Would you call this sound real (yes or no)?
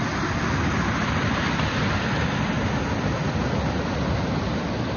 yes